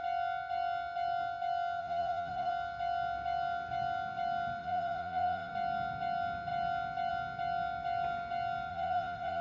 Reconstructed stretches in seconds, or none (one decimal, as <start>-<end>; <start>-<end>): 1.8-2.5; 4.6-5.5; 8.7-9.4